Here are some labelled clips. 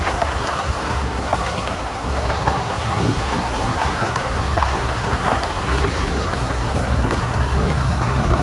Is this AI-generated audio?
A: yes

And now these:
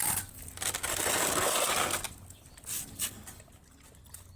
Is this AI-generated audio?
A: no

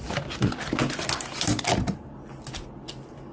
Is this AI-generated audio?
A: no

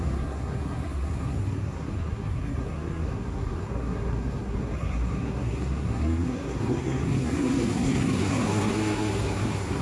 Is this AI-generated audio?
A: yes